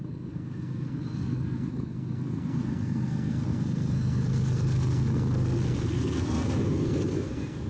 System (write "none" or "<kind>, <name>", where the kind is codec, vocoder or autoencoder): codec, SNAC